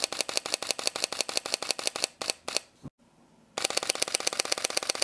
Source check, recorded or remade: recorded